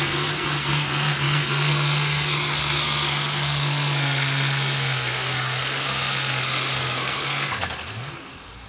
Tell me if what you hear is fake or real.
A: fake